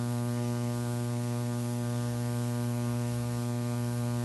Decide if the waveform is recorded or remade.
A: remade